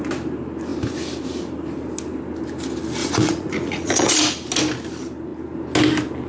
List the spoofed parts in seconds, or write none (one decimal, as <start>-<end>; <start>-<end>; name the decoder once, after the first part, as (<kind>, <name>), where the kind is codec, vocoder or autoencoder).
3.0-4.1 (vocoder, Vocos)